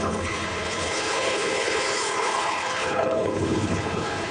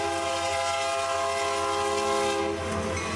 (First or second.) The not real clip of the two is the first